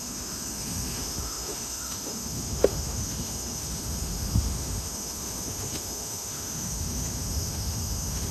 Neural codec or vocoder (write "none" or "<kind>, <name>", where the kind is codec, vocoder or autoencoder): autoencoder, DAC-VAE